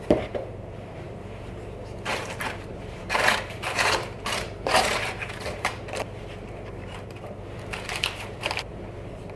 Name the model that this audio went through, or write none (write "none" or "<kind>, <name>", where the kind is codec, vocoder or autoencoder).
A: vocoder, BigVGAN v2